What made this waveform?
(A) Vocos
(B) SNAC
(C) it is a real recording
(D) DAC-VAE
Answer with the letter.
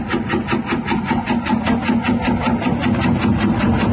C